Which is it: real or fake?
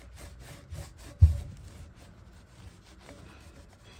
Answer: real